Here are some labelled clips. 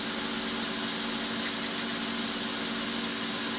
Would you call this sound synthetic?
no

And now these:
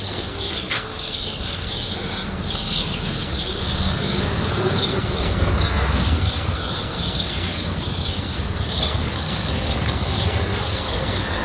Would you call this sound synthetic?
yes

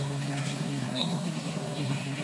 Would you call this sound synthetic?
yes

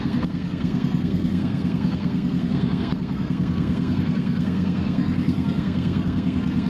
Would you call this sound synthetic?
yes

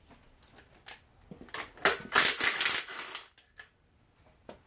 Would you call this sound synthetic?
no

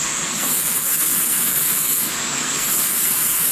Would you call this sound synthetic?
yes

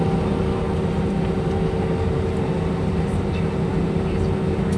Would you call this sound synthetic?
no